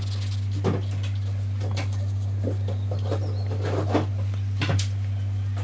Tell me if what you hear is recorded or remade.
recorded